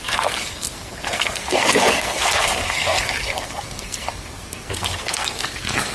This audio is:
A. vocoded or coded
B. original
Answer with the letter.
A